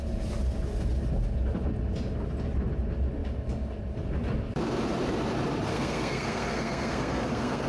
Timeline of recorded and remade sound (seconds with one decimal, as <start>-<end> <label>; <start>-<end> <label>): 0.0-5.7 recorded; 5.7-7.7 remade

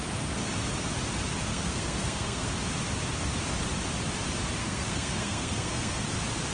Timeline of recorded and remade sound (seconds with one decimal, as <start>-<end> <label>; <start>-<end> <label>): 0.0-1.5 recorded; 1.5-2.5 remade; 2.5-4.6 recorded; 4.6-6.0 remade; 6.0-6.5 recorded

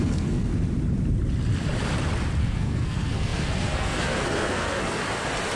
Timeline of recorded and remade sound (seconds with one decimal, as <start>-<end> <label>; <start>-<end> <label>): 0.0-0.5 remade; 0.5-2.4 recorded; 2.4-5.0 remade; 5.0-5.6 recorded

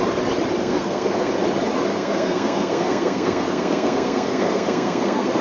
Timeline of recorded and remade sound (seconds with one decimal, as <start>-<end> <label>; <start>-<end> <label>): 0.0-0.6 recorded; 0.6-1.3 remade; 1.3-1.9 recorded; 1.9-5.4 remade

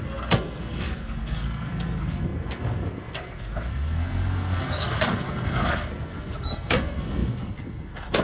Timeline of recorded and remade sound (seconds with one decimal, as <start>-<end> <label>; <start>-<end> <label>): 0.0-8.2 remade

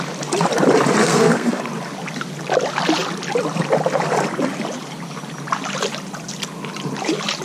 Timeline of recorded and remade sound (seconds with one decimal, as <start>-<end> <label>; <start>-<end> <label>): 0.0-1.0 recorded; 1.0-1.6 remade; 1.6-7.4 recorded

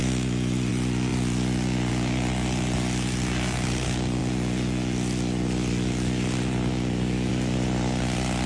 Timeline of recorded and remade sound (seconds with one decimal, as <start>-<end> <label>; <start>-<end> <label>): 0.0-8.5 recorded

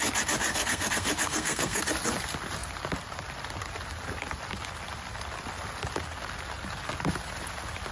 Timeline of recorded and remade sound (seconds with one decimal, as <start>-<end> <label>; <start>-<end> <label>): 0.0-0.5 recorded; 0.5-1.8 remade; 1.8-7.9 recorded